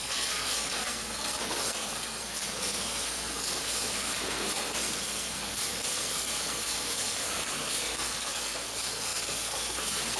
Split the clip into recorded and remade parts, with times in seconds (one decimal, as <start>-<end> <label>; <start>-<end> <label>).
0.0-10.2 remade